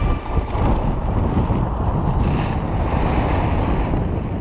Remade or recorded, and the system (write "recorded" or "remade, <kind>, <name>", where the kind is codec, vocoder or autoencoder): recorded